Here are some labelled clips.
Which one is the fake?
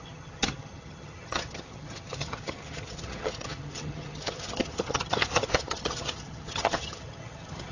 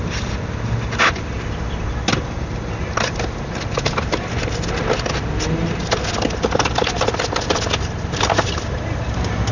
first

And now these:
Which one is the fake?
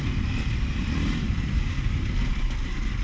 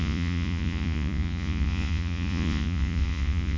second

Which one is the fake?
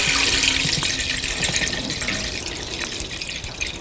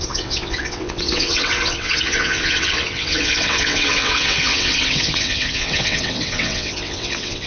second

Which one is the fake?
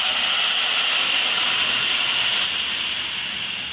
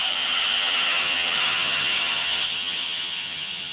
second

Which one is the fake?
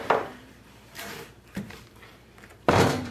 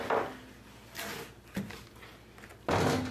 first